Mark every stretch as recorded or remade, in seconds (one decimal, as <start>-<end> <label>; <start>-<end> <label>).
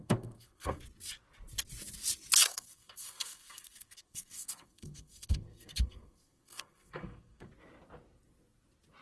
0.0-0.8 remade; 0.8-2.5 recorded; 2.5-7.5 remade; 7.5-9.0 recorded